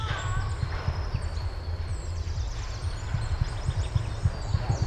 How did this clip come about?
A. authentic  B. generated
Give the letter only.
A